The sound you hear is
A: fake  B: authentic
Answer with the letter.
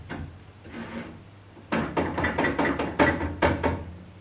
B